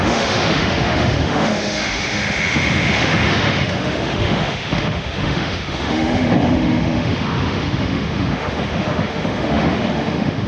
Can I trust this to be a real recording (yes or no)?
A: no